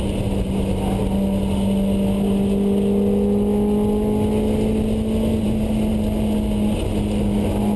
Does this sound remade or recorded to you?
recorded